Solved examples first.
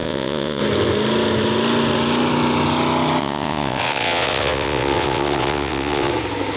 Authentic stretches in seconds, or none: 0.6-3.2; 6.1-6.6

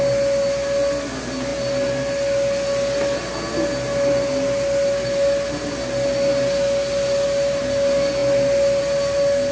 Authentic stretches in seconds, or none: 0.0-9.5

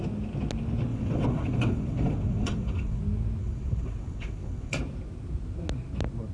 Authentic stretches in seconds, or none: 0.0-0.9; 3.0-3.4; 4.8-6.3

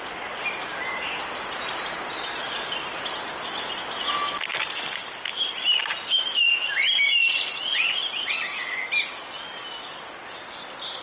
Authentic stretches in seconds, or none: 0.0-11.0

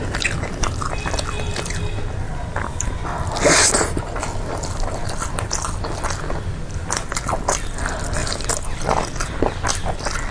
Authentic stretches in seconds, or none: 0.0-10.3

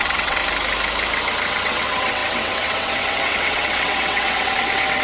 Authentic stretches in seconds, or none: 0.4-1.5